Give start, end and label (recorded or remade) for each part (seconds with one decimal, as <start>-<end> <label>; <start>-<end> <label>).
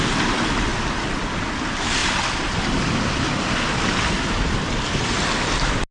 0.0-5.9 recorded